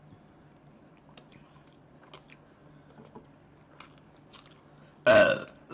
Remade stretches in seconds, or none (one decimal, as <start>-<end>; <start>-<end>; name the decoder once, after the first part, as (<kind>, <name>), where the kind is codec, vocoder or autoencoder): none